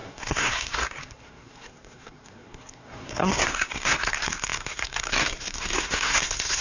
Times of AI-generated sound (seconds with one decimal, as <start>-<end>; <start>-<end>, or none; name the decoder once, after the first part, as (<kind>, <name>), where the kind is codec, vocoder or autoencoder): 0.0-6.6 (codec, SNAC)